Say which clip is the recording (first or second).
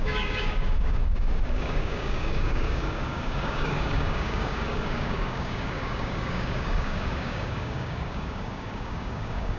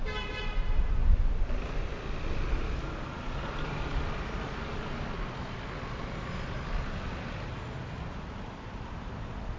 second